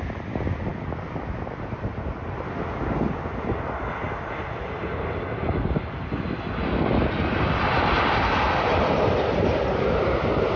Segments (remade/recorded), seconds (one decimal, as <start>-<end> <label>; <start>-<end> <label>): 0.0-10.6 recorded